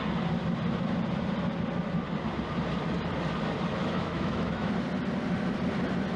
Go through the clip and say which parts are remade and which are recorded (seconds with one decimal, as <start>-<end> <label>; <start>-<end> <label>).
0.0-3.8 recorded; 3.8-4.7 remade; 4.7-6.2 recorded